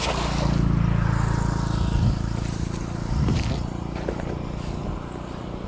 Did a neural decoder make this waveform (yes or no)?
no